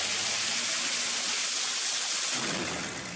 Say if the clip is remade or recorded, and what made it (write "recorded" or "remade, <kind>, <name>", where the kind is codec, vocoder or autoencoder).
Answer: recorded